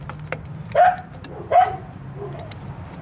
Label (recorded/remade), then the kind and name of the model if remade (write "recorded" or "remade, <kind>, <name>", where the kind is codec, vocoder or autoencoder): recorded